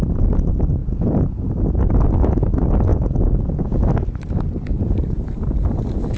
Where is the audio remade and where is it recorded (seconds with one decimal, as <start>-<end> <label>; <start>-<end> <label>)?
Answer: 0.0-0.8 recorded; 0.8-1.6 remade; 1.6-2.9 recorded; 2.9-3.8 remade; 3.8-6.2 recorded